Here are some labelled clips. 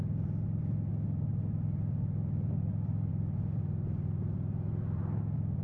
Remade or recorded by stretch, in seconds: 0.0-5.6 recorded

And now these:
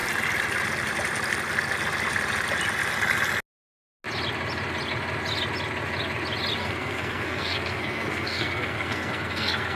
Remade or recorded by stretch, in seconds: 0.0-6.6 recorded; 6.6-9.8 remade

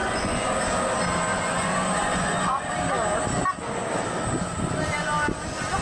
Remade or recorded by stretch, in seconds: 0.0-0.6 remade; 0.6-1.3 recorded; 1.3-2.7 remade; 2.7-5.8 recorded

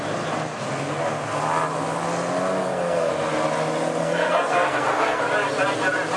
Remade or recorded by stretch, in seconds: 0.0-2.6 recorded; 2.6-3.1 remade; 3.1-4.0 recorded; 4.0-5.2 remade; 5.2-6.2 recorded

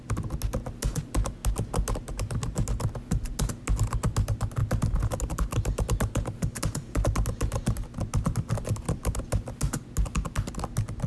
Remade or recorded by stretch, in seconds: 0.0-11.1 recorded